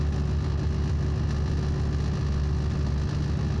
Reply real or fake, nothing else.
real